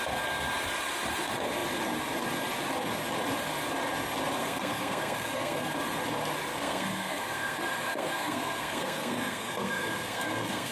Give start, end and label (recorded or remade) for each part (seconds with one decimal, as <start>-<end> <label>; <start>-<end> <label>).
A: 0.0-4.4 recorded; 4.4-5.7 remade; 5.7-6.5 recorded; 6.5-10.7 remade